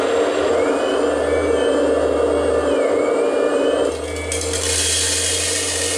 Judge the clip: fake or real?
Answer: real